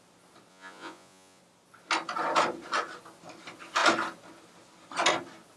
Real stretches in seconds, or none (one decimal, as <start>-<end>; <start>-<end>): 0.0-0.5; 1.4-5.6